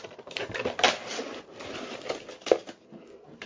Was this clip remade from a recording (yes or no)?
no